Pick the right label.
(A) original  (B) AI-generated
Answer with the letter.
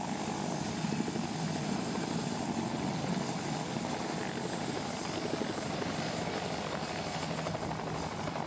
A